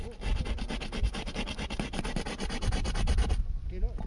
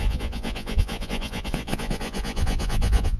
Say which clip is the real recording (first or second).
first